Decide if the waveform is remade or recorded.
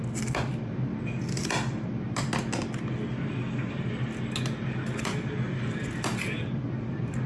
recorded